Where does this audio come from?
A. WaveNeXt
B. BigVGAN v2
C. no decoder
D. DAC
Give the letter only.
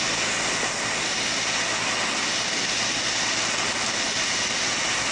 C